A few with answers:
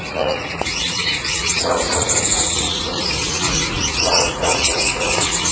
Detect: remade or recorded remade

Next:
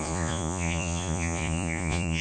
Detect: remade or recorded remade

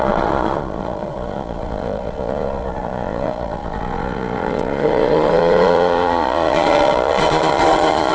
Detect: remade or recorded remade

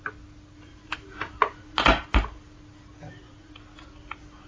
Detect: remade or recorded recorded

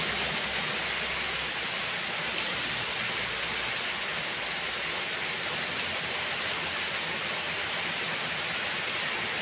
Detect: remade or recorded recorded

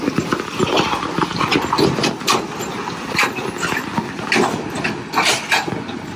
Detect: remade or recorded recorded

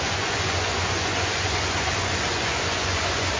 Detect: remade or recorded remade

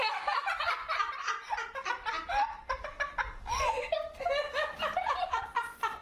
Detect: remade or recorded recorded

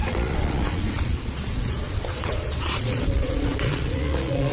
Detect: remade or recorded remade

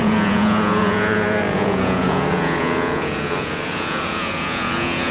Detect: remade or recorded remade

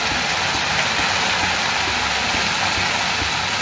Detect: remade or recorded recorded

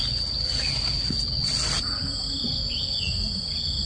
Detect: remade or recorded recorded